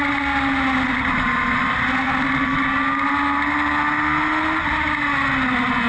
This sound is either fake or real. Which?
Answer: real